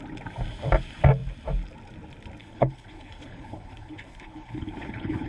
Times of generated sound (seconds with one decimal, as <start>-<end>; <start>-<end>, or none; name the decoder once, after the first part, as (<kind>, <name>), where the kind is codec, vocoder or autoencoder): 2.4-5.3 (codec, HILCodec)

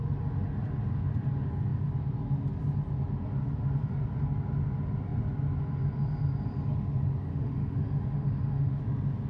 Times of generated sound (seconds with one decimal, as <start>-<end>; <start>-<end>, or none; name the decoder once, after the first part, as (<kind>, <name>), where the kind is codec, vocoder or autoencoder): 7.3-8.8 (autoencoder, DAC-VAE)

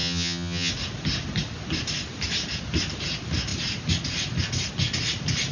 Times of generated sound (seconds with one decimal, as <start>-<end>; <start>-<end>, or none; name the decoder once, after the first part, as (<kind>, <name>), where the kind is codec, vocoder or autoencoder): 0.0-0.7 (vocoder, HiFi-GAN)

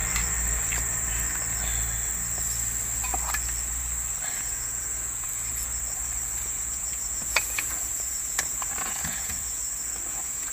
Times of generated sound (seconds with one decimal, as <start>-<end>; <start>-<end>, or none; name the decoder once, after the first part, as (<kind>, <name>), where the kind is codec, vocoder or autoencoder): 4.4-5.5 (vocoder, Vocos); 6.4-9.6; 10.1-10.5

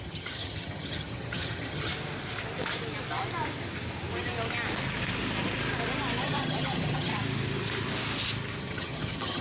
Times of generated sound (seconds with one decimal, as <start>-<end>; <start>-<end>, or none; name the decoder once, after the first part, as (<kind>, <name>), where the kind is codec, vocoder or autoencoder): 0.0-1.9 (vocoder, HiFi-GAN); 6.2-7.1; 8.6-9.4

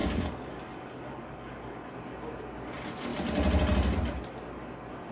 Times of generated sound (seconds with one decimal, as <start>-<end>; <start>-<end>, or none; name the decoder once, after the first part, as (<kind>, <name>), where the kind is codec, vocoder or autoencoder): 0.0-1.9 (codec, DAC)

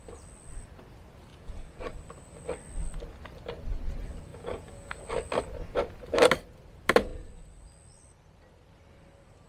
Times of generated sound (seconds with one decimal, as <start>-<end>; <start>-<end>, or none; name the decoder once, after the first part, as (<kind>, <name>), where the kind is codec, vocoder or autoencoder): 1.3-1.8 (vocoder, Vocos); 4.3-5.0